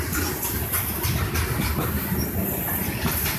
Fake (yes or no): no